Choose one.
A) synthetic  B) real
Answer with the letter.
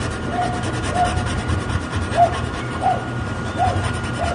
A